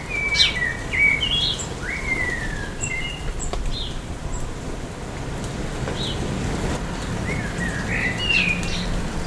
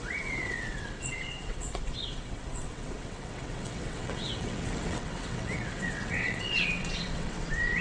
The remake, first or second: second